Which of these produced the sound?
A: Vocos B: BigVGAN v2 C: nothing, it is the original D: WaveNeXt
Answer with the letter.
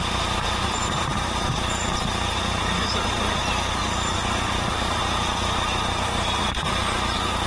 B